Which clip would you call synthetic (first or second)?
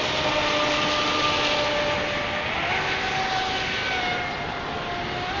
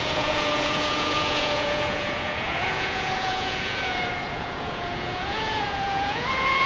second